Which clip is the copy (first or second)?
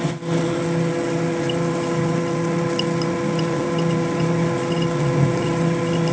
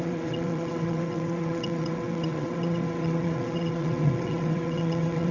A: second